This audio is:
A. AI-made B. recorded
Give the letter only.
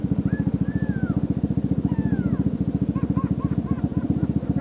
B